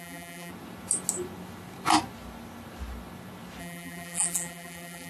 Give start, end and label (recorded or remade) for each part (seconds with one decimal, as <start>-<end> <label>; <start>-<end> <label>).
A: 0.0-0.5 remade; 0.5-3.6 recorded; 3.6-5.1 remade